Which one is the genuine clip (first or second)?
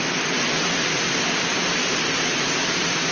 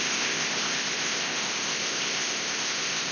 first